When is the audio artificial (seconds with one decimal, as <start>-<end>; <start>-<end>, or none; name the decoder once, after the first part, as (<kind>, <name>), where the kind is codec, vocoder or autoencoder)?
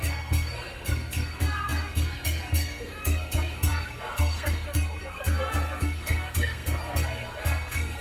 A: 0.0-8.0 (codec, SNAC)